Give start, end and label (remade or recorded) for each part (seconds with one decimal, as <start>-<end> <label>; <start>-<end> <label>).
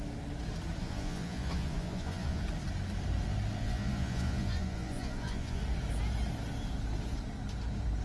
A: 0.0-0.8 recorded; 0.8-2.4 remade; 2.4-3.6 recorded; 3.6-5.6 remade; 5.6-8.0 recorded